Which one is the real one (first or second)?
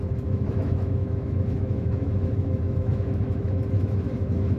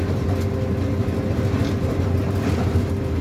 second